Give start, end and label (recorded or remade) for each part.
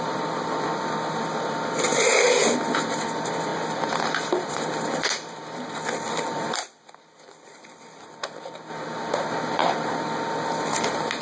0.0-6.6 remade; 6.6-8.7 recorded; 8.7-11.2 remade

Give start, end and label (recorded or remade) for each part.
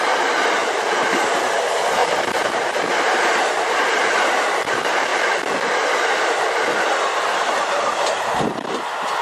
0.0-0.6 remade; 0.6-1.6 recorded; 1.6-5.1 remade; 5.1-7.7 recorded; 7.7-9.2 remade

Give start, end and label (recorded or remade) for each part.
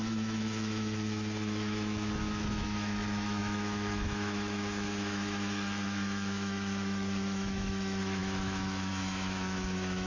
0.0-10.1 remade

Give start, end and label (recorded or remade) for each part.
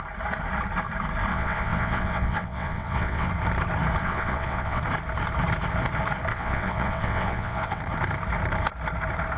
0.0-1.3 recorded; 1.3-3.3 remade; 3.3-4.0 recorded; 4.0-4.8 remade; 4.8-6.3 recorded; 6.3-7.8 remade; 7.8-9.4 recorded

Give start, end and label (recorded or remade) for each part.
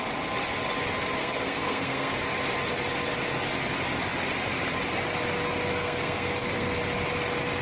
0.0-1.2 recorded; 1.2-2.2 remade; 2.2-5.7 recorded; 5.7-6.8 remade; 6.8-7.6 recorded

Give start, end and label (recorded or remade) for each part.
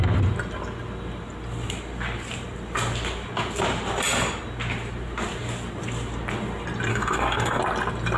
0.0-6.9 recorded; 6.9-7.6 remade; 7.6-8.2 recorded